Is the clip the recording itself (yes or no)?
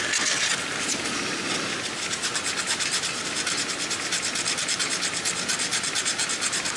yes